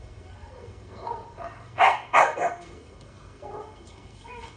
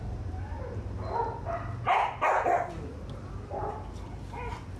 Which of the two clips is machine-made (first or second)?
first